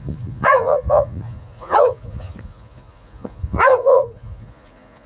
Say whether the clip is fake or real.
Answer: fake